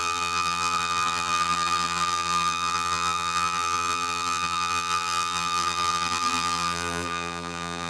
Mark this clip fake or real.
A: fake